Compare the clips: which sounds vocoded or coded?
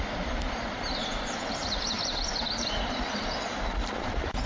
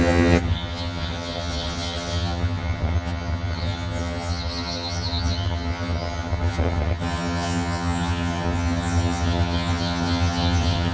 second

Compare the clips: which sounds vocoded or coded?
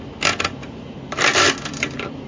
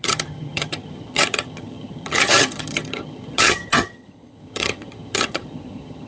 second